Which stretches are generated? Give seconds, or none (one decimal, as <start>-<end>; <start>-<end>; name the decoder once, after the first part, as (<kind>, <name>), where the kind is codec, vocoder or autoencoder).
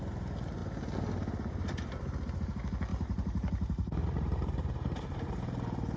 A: 2.9-6.0 (vocoder, BigVGAN v2)